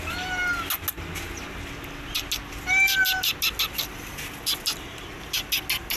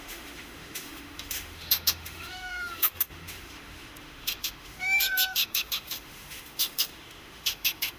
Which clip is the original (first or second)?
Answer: first